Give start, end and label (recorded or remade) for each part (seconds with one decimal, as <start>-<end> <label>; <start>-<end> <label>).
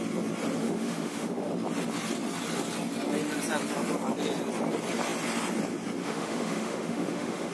0.0-0.6 recorded; 0.6-1.5 remade; 1.5-6.0 recorded; 6.0-7.5 remade